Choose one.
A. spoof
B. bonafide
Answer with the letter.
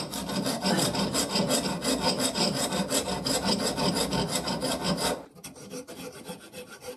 B